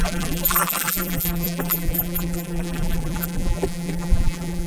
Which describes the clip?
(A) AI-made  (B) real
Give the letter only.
A